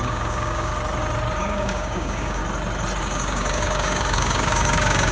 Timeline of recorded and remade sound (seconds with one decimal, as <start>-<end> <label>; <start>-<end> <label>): 0.0-0.7 remade; 0.7-1.4 recorded; 1.4-2.4 remade; 2.4-3.0 recorded; 3.0-5.1 remade

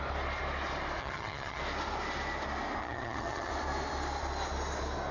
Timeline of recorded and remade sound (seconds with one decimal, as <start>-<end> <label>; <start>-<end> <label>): 0.0-1.0 recorded; 1.0-1.6 remade; 1.6-2.8 recorded; 2.8-3.5 remade; 3.5-5.1 recorded

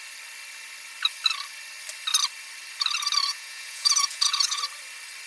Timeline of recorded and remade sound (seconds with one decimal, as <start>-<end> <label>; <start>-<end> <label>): 0.0-3.3 recorded; 3.3-4.6 remade; 4.6-5.3 recorded

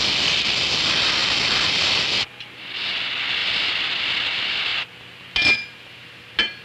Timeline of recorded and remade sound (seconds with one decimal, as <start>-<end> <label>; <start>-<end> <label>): 0.0-1.2 recorded; 1.2-2.0 remade; 2.0-3.4 recorded; 3.4-4.0 remade; 4.0-4.7 recorded; 4.7-6.6 remade